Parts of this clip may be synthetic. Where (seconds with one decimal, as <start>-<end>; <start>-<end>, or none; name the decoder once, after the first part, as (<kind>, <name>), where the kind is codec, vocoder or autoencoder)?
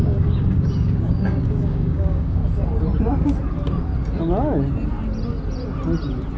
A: 0.0-2.4 (codec, DAC)